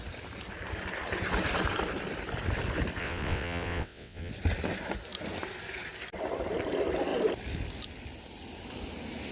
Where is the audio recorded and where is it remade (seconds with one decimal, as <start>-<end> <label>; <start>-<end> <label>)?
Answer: 0.0-3.0 recorded; 3.0-4.3 remade; 4.3-9.3 recorded